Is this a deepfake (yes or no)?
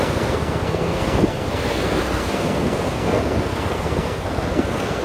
yes